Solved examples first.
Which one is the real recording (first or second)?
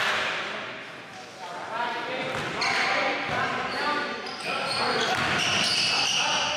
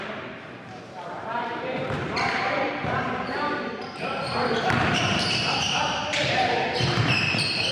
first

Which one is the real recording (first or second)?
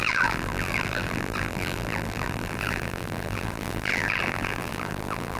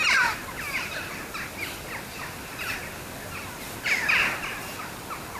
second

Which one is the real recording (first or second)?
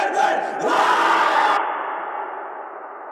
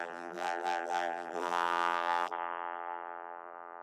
first